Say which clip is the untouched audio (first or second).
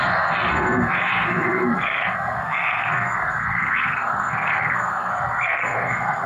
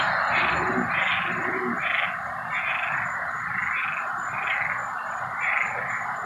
second